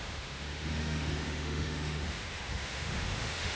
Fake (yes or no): yes